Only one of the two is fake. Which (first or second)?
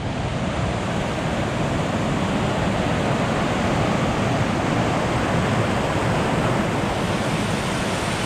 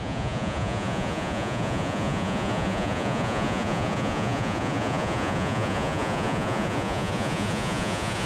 second